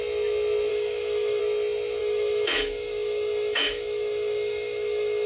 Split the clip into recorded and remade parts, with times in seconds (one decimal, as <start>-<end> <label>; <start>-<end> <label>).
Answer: 0.0-0.7 recorded; 0.7-1.4 remade; 1.4-2.0 recorded; 2.0-5.3 remade